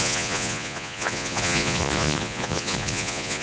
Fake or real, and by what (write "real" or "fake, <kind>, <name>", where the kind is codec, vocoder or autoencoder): fake, vocoder, Vocos